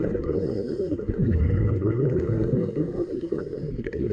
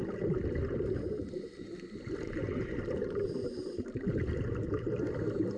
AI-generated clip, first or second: first